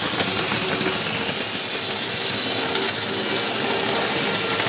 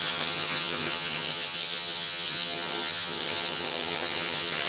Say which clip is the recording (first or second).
first